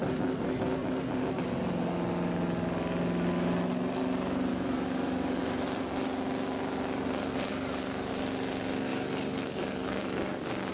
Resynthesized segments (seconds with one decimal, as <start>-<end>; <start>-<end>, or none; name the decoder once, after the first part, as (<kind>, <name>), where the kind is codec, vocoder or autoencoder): 4.5-5.4 (codec, DAC); 7.5-8.1; 8.9-10.7